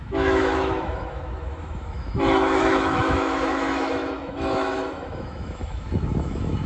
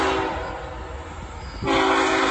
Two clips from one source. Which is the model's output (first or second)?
first